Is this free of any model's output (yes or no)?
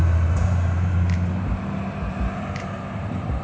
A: no